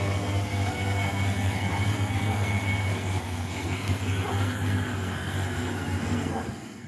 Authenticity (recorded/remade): remade